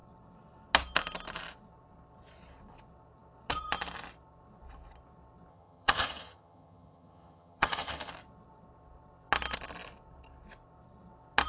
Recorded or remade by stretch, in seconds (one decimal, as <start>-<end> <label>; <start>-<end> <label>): 0.0-5.5 recorded; 5.5-8.1 remade; 8.1-11.5 recorded